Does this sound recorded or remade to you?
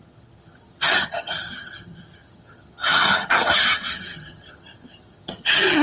remade